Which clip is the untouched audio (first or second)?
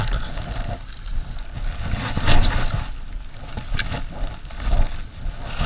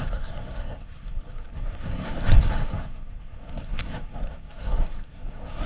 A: first